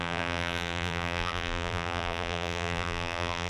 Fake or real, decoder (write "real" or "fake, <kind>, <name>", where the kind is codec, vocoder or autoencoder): fake, vocoder, BigVGAN v2